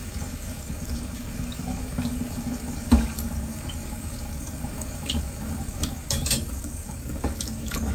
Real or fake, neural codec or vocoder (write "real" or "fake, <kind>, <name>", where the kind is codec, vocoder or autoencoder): fake, codec, DAC